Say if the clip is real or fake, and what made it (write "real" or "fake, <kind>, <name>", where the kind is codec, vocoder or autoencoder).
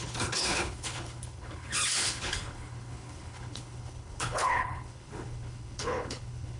fake, codec, HILCodec